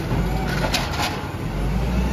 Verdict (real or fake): real